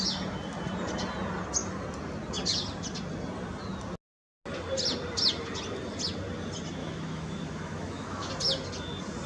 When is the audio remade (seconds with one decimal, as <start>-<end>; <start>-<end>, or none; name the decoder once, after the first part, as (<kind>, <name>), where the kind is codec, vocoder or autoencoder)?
6.8-8.3 (autoencoder, DAC-VAE)